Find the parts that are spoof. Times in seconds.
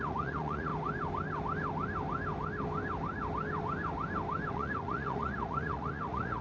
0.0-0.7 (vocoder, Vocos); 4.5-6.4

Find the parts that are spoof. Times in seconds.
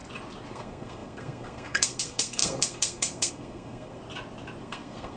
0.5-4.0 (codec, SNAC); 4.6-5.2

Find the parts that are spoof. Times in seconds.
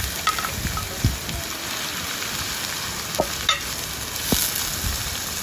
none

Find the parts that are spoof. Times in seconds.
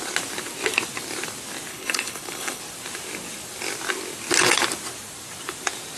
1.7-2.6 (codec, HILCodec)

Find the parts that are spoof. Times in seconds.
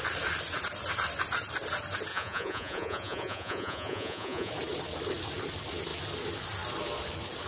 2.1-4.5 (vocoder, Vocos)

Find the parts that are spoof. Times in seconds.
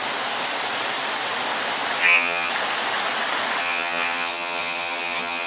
2.0-2.5 (vocoder, HiFi-GAN); 3.6-5.5